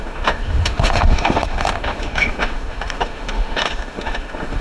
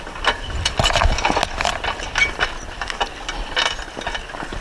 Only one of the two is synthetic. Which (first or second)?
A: first